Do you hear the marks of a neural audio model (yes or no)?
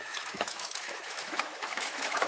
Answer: yes